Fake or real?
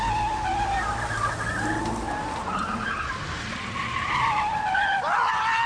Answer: real